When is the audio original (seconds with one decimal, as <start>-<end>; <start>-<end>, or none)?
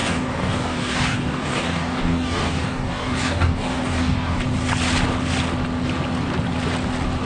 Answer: 4.4-7.3